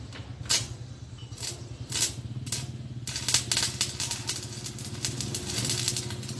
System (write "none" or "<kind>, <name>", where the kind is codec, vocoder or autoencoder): none